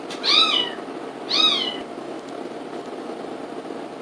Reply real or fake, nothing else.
real